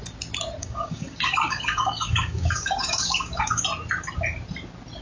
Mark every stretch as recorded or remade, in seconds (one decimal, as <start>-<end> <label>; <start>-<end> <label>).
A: 0.0-0.6 recorded; 0.6-3.6 remade; 3.6-5.0 recorded